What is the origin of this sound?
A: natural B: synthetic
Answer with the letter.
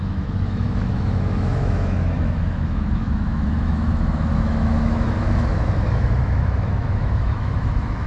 B